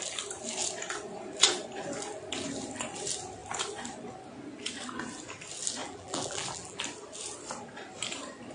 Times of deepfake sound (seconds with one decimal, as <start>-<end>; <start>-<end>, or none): 5.8-6.8